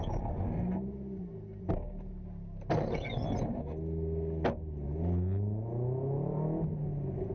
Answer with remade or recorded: recorded